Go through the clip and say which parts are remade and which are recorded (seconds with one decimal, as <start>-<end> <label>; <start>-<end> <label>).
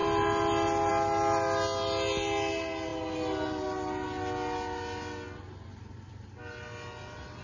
0.0-7.4 recorded